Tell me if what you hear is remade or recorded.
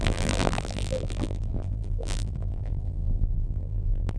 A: remade